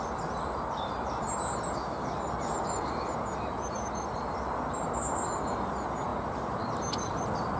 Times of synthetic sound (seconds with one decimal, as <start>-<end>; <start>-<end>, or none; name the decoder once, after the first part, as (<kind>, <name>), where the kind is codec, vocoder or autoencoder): none